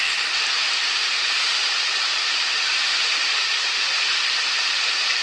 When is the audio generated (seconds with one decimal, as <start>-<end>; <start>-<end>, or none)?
1.0-4.1